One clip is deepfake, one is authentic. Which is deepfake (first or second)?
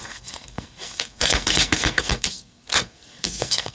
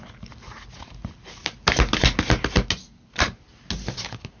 first